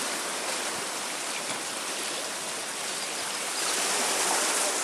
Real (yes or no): no